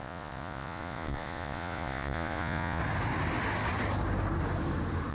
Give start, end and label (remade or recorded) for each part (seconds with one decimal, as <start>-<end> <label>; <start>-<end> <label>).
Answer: 0.0-2.8 remade; 2.8-5.1 recorded